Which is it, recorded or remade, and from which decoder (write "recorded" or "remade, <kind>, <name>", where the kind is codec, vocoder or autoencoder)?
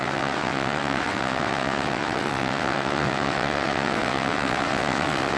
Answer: remade, vocoder, WaveNeXt